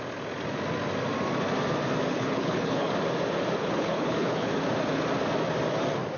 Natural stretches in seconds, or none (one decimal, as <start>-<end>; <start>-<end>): 0.0-2.1; 2.9-3.6; 4.5-6.2